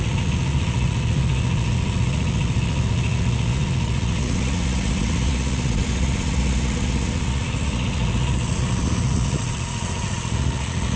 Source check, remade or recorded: remade